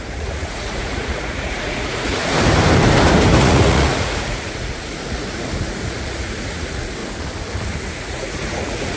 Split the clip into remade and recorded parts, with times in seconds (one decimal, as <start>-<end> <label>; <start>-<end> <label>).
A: 0.0-2.2 remade; 2.2-3.4 recorded; 3.4-7.0 remade; 7.0-8.0 recorded; 8.0-9.0 remade